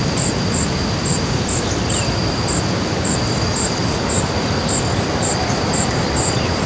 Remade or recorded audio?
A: remade